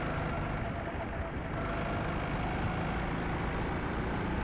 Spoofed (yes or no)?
no